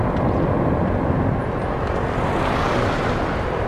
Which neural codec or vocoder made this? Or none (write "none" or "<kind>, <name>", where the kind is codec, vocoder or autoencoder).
vocoder, BigVGAN v2